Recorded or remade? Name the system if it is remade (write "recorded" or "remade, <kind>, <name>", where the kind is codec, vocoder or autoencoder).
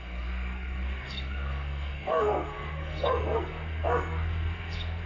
remade, codec, SNAC